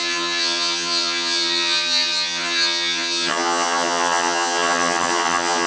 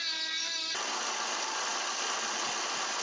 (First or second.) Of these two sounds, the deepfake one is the first